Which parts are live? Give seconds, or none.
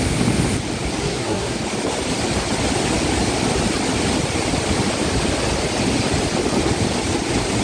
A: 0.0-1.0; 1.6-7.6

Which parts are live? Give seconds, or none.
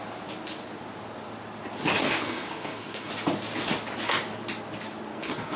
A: 0.0-2.0; 3.1-5.1